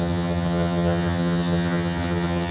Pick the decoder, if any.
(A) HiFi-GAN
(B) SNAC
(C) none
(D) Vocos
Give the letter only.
A